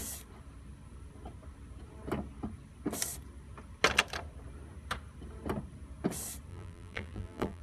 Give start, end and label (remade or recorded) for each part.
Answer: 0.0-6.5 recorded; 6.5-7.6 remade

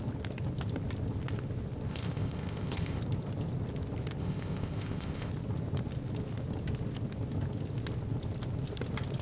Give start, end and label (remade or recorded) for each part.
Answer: 0.0-1.9 recorded; 1.9-3.0 remade; 3.0-4.2 recorded; 4.2-5.3 remade; 5.3-9.2 recorded